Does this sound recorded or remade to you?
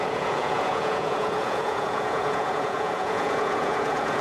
remade